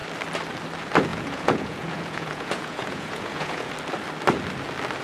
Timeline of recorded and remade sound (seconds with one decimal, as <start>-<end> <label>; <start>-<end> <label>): 0.0-1.1 recorded; 1.1-3.7 remade; 3.7-5.0 recorded